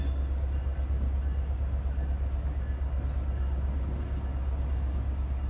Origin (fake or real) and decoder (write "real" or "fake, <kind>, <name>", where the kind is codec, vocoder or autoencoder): real